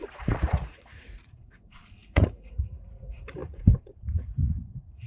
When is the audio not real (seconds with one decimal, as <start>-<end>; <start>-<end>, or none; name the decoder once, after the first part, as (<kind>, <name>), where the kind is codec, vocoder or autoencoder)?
0.0-5.1 (vocoder, Vocos)